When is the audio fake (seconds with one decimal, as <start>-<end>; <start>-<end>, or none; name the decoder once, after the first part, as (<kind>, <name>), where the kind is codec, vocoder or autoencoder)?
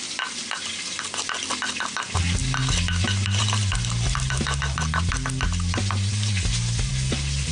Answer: none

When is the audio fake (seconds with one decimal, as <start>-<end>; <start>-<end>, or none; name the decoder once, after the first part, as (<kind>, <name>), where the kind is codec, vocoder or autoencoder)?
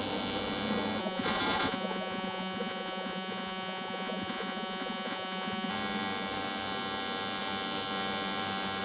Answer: 1.0-5.7 (vocoder, Vocos)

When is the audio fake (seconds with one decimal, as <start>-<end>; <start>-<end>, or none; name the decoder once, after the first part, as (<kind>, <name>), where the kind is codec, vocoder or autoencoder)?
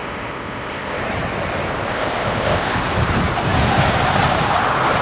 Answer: 0.0-1.0 (codec, ZipCodec); 1.9-2.8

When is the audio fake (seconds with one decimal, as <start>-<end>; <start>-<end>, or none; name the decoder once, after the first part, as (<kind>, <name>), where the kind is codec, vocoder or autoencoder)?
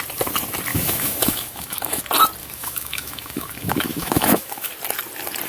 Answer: 0.7-2.0 (autoencoder, DAC-VAE); 2.4-4.7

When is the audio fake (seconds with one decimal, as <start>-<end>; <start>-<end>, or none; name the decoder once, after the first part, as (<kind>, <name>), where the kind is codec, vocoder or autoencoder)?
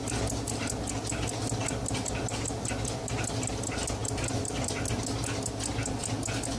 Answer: none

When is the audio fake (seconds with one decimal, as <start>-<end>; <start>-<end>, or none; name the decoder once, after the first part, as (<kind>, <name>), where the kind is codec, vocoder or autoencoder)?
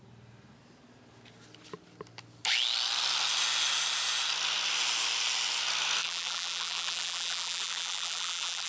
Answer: 6.0-8.7 (vocoder, BigVGAN v2)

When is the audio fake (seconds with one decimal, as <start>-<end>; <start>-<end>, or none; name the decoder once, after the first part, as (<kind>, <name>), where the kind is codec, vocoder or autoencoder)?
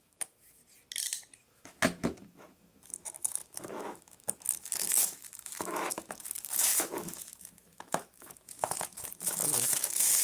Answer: 0.0-0.6 (autoencoder, DAC-VAE); 1.4-10.2